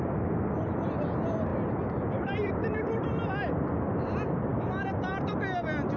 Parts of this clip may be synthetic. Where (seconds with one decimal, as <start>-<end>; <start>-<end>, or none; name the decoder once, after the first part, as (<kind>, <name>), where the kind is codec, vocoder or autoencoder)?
none